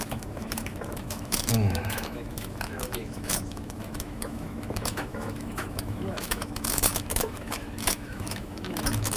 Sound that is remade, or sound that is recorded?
remade